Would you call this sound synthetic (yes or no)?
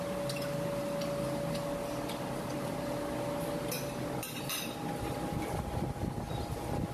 no